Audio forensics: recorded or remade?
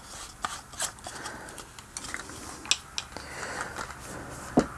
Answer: recorded